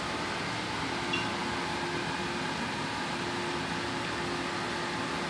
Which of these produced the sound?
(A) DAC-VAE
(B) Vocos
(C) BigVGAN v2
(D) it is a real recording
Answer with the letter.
D